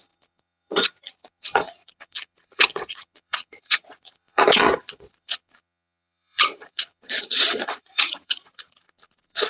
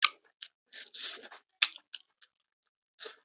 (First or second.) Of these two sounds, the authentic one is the second